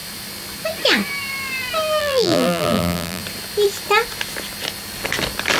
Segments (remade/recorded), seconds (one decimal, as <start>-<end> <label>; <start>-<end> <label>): 0.0-2.0 recorded; 2.0-3.2 remade; 3.2-5.6 recorded